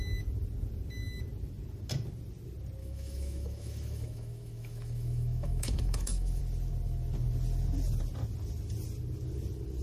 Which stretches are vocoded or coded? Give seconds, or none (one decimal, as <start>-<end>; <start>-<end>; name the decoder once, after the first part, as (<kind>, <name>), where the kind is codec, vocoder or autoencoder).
2.8-6.4 (autoencoder, DAC-VAE)